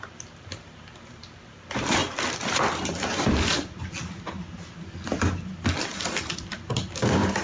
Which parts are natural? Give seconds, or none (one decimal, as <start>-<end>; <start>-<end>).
2.0-6.2